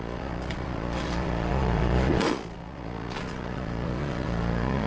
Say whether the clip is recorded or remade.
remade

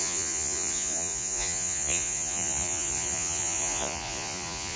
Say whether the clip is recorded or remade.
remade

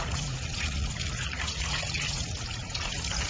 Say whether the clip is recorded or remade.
remade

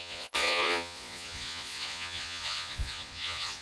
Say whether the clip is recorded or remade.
remade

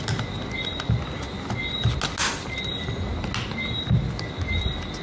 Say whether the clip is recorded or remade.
recorded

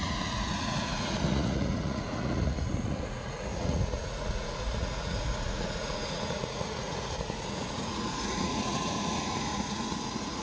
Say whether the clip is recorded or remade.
remade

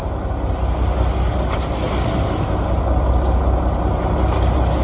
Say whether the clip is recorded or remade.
recorded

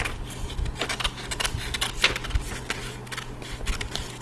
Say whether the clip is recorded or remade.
recorded